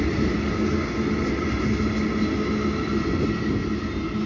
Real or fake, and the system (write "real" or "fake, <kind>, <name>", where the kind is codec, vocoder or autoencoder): real